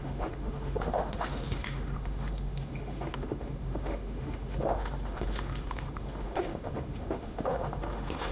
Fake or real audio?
fake